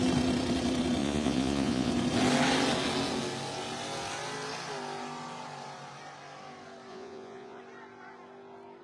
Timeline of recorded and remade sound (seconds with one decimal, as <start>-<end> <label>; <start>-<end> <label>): 0.0-1.0 recorded; 1.0-1.9 remade; 1.9-6.9 recorded; 6.9-7.6 remade; 7.6-8.8 recorded

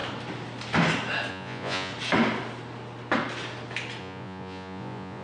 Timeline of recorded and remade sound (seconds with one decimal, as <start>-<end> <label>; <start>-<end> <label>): 0.0-1.3 recorded; 1.3-1.9 remade; 1.9-4.0 recorded; 4.0-5.2 remade

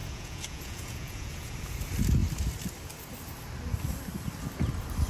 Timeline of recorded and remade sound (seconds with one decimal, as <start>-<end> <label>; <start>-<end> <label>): 0.0-1.8 remade; 1.8-5.1 recorded

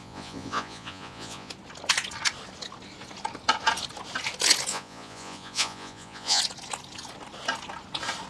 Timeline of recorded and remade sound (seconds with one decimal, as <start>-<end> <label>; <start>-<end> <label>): 0.0-1.5 remade; 1.5-4.7 recorded; 4.7-6.4 remade; 6.4-8.3 recorded

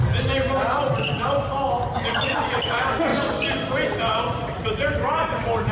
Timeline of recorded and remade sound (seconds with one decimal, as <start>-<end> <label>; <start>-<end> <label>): 0.0-5.7 recorded

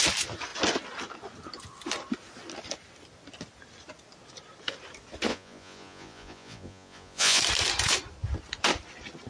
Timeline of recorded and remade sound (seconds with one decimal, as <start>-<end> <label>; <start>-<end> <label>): 0.0-5.3 recorded; 5.3-7.4 remade; 7.4-9.3 recorded